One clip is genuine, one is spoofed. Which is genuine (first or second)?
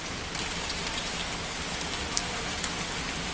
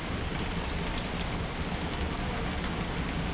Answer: first